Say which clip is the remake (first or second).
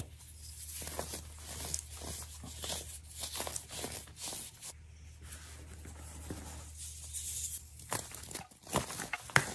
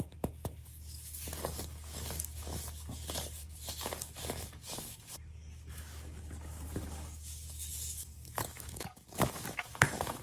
second